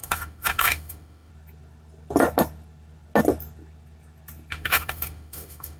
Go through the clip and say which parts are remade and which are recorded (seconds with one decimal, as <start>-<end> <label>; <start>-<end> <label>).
0.0-1.3 remade; 1.3-4.5 recorded; 4.5-5.8 remade